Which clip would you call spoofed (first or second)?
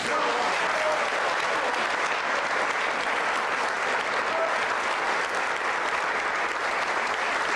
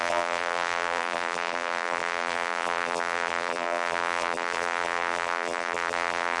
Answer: second